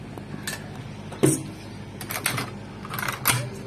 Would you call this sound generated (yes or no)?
no